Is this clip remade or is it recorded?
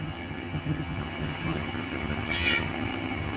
remade